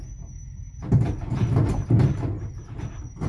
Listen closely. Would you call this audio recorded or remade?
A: recorded